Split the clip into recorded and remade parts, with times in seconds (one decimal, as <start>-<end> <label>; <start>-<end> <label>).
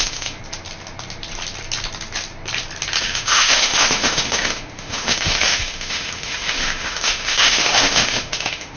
0.0-0.4 remade; 0.4-3.0 recorded; 3.0-8.8 remade